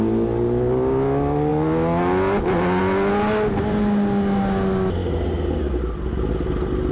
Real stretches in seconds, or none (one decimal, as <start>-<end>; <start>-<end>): 0.0-6.9